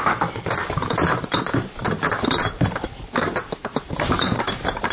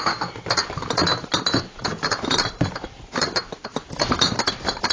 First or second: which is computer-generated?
first